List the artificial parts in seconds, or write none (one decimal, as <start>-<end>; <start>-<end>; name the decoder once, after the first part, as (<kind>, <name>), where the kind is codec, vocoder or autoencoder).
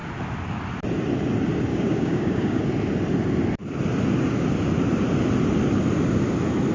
1.7-2.6 (codec, DAC)